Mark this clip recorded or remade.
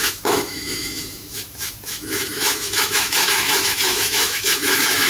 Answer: remade